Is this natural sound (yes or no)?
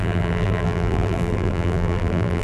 no